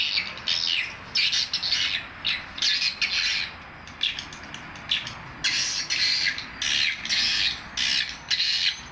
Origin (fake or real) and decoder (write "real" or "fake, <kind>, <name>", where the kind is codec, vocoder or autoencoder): real